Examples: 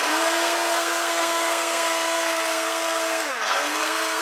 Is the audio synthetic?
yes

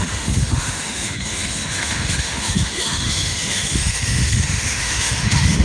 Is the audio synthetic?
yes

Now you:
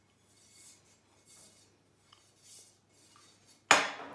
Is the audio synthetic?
no